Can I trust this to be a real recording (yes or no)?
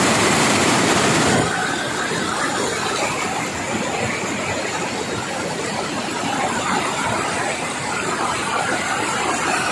no